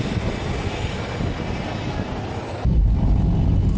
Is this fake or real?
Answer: real